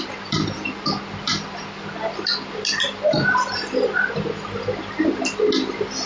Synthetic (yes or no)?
no